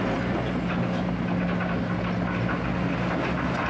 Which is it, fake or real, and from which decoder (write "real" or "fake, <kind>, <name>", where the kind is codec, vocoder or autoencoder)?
real